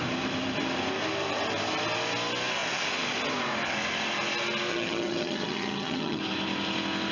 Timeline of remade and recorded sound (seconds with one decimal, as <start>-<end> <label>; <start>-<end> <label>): 0.0-4.7 recorded; 4.7-6.2 remade; 6.2-7.1 recorded